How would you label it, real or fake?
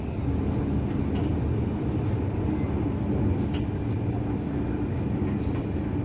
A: real